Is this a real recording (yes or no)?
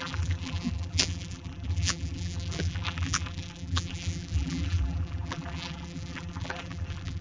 no